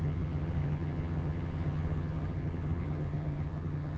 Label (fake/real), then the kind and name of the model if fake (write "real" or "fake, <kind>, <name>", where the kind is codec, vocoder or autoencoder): fake, vocoder, HiFi-GAN